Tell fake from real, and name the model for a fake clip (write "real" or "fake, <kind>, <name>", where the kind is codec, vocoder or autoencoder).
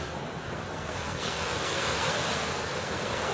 fake, codec, SNAC